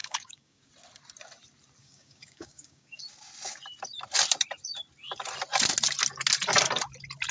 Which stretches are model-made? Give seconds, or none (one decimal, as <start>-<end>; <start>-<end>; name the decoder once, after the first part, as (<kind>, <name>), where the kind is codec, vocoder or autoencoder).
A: 0.0-0.7 (codec, DAC); 1.8-3.0